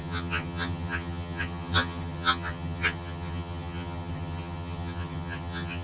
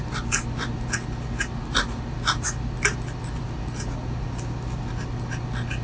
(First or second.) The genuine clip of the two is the second